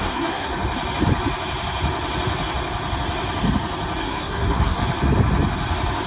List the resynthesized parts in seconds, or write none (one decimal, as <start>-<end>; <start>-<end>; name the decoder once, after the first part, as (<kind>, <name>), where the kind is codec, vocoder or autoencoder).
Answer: 0.0-0.5 (codec, SNAC); 4.0-4.8